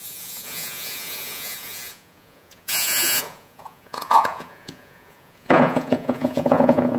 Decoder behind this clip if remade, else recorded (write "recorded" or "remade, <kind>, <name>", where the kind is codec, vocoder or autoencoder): remade, vocoder, Vocos